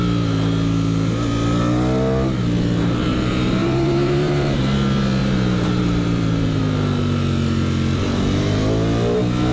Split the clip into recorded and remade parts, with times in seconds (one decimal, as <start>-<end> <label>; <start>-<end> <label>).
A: 0.0-3.1 recorded; 3.1-4.6 remade; 4.6-5.2 recorded; 5.2-6.6 remade; 6.6-9.5 recorded